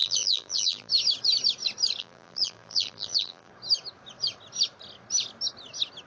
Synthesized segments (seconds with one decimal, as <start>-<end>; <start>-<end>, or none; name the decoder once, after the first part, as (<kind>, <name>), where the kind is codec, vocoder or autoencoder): 0.0-0.9 (vocoder, BigVGAN v2); 2.0-3.5